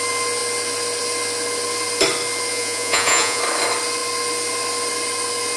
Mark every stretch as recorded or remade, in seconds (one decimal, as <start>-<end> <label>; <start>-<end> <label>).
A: 0.0-2.5 recorded; 2.5-3.4 remade; 3.4-5.6 recorded